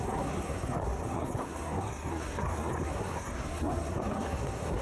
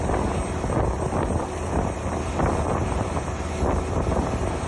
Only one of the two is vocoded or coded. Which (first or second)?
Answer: first